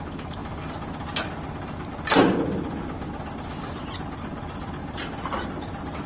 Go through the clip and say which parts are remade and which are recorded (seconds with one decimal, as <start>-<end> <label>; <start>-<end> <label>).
0.0-4.8 recorded; 4.8-6.1 remade